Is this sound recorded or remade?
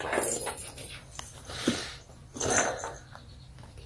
recorded